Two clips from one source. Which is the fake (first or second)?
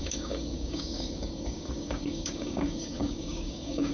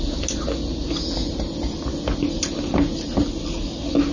first